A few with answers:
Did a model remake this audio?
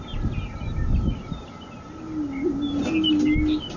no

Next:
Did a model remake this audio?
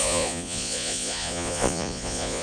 yes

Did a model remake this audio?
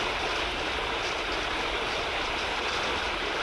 no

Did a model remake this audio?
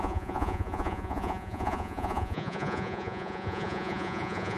yes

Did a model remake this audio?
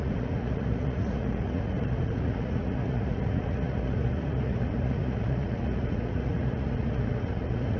yes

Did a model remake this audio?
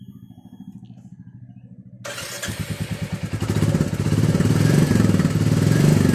no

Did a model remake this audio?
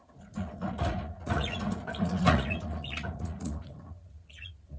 yes